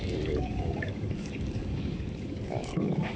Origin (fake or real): fake